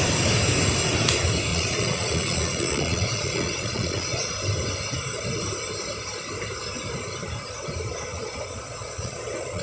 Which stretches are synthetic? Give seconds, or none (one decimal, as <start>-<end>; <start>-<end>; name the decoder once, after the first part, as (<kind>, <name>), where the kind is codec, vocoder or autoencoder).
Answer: 1.5-4.3 (vocoder, Vocos); 8.1-9.6